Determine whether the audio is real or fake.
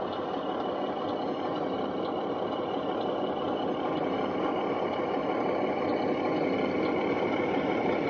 real